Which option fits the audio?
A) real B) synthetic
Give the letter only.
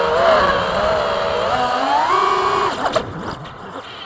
A